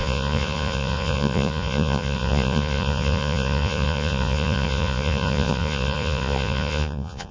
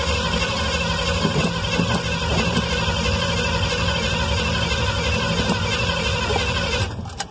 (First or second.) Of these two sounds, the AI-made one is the first